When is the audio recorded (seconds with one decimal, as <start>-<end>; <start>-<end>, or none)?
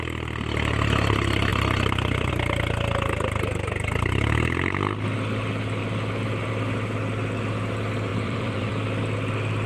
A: 0.0-1.5; 2.3-8.1; 8.7-9.7